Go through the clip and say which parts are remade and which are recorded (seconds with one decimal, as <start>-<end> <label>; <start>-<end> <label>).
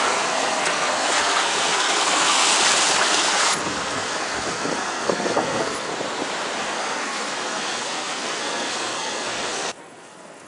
0.0-2.5 remade; 2.5-3.1 recorded; 3.1-5.9 remade; 5.9-6.6 recorded; 6.6-10.5 remade